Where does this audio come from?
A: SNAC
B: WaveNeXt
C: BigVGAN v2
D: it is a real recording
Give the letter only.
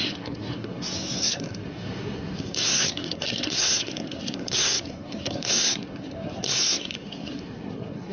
A